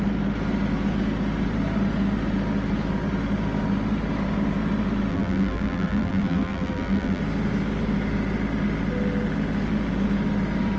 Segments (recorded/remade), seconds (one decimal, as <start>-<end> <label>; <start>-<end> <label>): 0.0-5.1 recorded; 5.1-7.2 remade; 7.2-10.8 recorded